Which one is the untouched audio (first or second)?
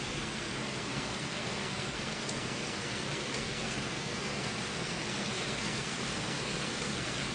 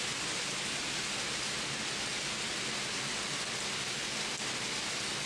second